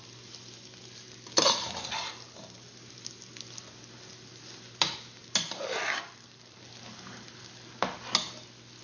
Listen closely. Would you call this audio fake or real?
real